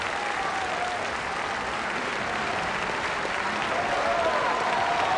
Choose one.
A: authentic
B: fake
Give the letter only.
A